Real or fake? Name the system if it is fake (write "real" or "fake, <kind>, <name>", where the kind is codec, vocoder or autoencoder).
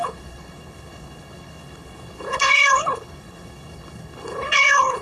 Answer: fake, codec, HILCodec